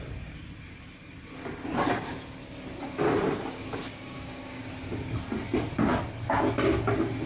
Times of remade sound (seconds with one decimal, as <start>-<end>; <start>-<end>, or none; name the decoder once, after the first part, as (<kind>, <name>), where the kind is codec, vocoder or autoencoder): 3.9-4.6 (codec, DAC)